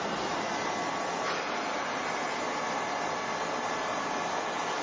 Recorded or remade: recorded